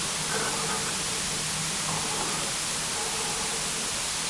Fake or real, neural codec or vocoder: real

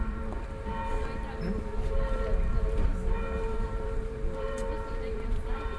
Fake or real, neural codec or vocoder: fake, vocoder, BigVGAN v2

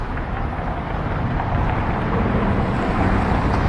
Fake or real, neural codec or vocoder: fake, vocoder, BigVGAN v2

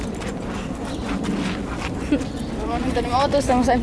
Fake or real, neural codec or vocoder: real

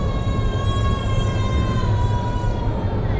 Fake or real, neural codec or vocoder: real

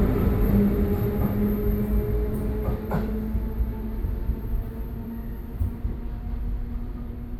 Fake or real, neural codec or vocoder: real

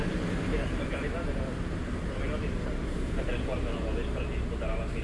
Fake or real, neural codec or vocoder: real